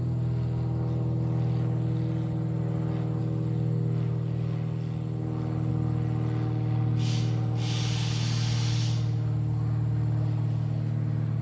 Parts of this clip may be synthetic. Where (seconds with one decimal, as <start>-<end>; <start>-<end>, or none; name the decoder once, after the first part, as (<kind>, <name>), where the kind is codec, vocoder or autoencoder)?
none